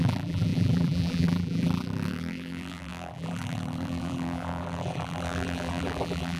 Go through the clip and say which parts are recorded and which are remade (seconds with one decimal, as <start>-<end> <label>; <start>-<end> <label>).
0.0-6.4 remade